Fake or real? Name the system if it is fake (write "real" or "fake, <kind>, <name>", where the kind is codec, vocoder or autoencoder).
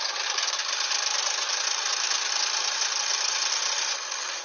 real